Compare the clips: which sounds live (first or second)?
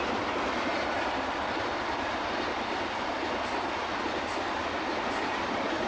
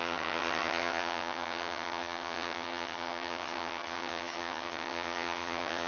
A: first